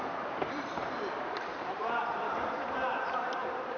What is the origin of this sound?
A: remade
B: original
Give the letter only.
A